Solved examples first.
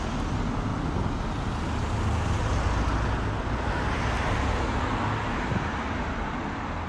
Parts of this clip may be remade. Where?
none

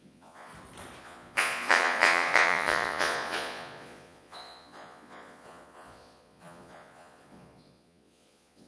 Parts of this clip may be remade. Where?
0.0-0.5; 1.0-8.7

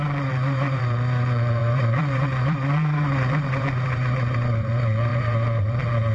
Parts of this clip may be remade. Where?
0.0-6.1

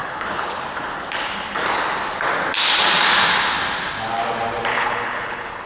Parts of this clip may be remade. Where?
0.0-0.6; 4.7-5.7

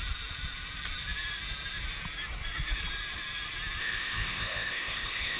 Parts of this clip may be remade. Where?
3.8-5.4